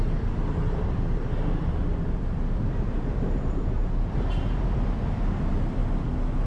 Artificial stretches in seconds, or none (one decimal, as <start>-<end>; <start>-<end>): 0.0-5.8